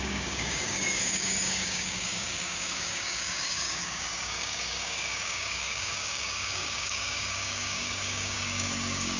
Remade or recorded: remade